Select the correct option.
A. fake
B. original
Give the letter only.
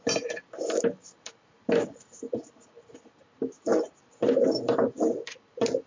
B